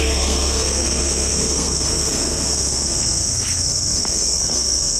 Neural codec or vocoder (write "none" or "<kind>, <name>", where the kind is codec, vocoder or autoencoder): codec, SNAC